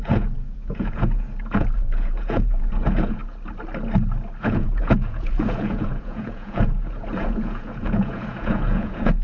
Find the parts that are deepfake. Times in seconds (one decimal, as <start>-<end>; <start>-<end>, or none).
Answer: 0.0-3.2; 4.4-9.2